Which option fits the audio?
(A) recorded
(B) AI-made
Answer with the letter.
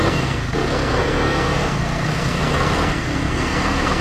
B